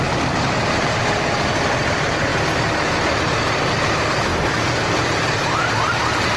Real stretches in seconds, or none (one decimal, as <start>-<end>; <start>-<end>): 2.3-3.4